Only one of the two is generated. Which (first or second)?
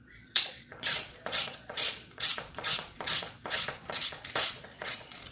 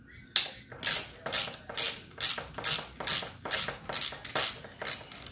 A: first